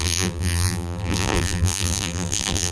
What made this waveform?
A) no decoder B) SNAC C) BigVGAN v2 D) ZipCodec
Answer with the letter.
C